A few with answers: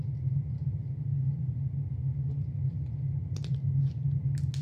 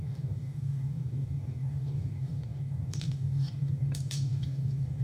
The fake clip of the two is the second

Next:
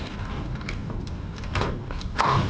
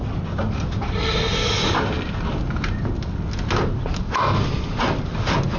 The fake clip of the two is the first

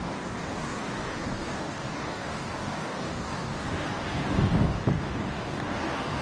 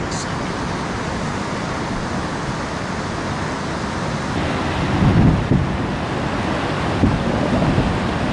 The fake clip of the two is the first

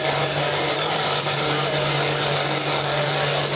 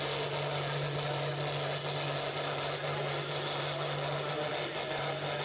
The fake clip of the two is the first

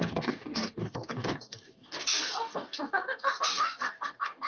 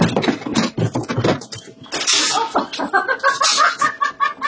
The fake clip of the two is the first